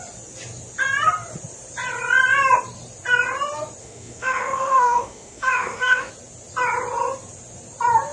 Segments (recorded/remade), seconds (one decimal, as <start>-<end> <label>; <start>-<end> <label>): 0.0-3.8 recorded; 3.8-6.1 remade; 6.1-8.1 recorded